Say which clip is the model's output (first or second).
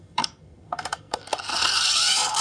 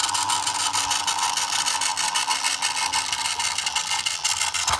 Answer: first